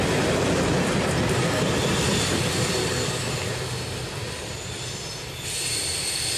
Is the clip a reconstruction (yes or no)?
yes